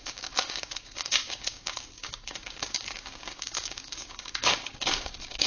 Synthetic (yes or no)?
yes